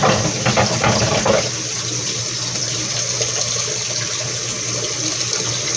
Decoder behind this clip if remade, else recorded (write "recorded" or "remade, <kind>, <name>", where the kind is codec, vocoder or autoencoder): recorded